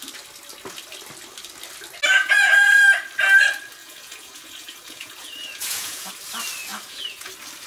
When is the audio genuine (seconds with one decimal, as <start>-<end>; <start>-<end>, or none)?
0.0-2.1; 2.7-3.8; 6.1-6.7; 7.3-7.7